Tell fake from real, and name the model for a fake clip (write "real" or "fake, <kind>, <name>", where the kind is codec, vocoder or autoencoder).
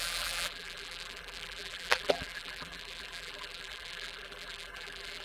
fake, vocoder, BigVGAN v2